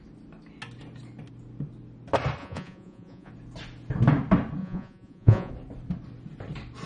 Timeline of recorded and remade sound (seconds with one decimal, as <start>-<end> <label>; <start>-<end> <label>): 0.0-2.4 recorded; 2.4-3.3 remade; 3.3-4.6 recorded; 4.6-5.5 remade; 5.5-6.9 recorded